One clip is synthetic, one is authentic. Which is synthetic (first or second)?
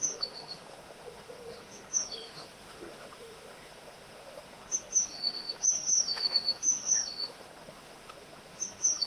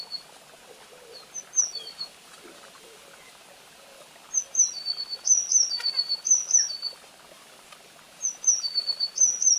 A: first